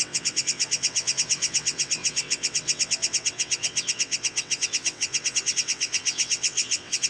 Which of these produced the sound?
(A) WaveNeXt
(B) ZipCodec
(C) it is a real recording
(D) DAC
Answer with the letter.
A